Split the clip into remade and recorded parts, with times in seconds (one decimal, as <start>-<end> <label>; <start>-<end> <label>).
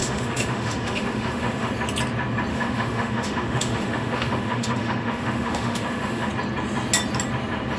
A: 0.0-1.7 remade; 1.7-2.5 recorded; 2.5-6.3 remade; 6.3-7.8 recorded